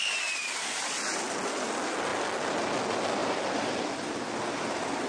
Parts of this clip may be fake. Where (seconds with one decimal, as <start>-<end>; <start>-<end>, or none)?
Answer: 0.4-1.2; 3.2-4.2